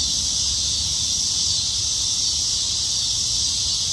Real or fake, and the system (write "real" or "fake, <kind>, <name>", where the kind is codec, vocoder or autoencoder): real